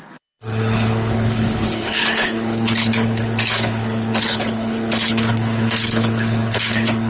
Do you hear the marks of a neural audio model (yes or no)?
yes